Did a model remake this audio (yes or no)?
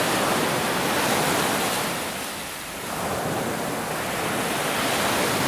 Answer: no